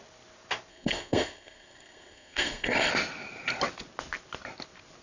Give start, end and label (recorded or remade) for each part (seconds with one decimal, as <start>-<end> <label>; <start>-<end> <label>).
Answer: 0.0-0.7 recorded; 0.7-2.9 remade; 2.9-5.0 recorded